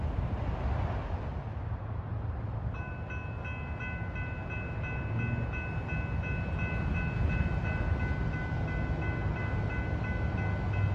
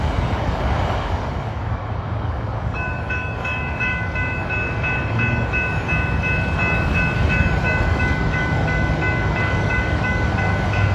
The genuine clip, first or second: first